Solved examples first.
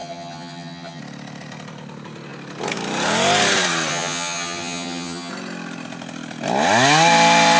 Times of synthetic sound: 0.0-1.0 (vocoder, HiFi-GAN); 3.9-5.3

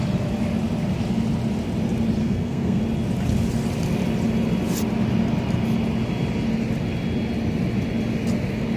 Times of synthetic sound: 2.2-2.8 (codec, SNAC)

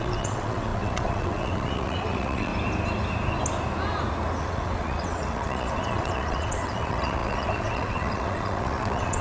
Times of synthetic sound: 0.0-2.5 (vocoder, WaveNeXt); 4.4-9.2

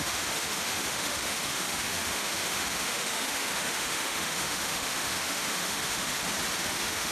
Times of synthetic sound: 0.0-6.1 (autoencoder, DAC-VAE); 6.6-7.1